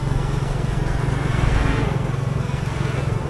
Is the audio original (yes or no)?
no